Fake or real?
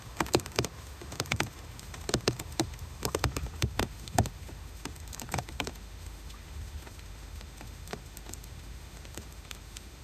fake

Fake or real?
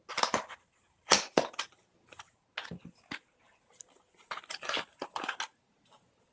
real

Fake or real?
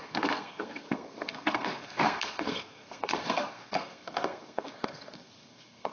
fake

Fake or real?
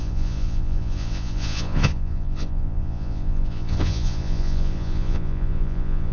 fake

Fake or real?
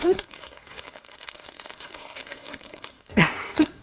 fake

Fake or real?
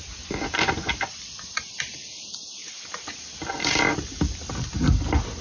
real